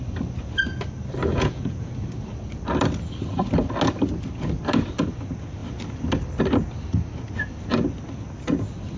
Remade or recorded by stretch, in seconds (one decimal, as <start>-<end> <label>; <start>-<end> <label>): 0.0-1.3 recorded; 1.3-1.9 remade; 1.9-9.0 recorded